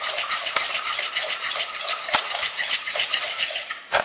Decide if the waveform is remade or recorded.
remade